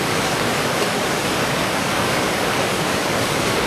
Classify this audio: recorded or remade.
remade